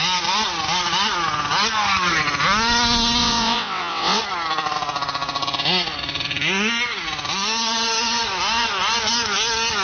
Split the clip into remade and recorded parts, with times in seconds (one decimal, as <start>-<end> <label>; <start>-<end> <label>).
0.0-3.2 recorded; 3.2-4.2 remade; 4.2-9.8 recorded